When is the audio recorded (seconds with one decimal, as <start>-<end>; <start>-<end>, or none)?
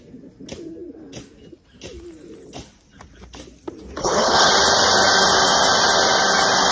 0.0-4.0; 4.5-6.7